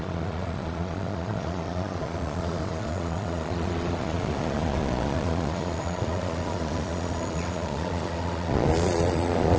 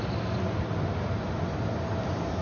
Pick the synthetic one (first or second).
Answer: first